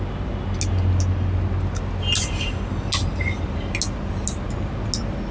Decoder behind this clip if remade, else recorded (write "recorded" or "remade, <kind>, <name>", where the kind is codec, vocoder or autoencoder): recorded